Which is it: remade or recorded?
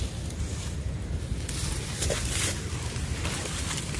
recorded